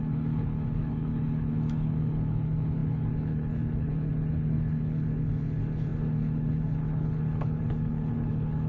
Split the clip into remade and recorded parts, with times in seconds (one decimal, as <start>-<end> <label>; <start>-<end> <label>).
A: 0.0-8.7 remade